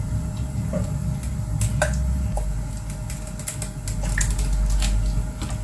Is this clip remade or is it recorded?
recorded